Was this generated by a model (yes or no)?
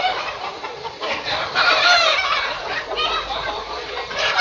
yes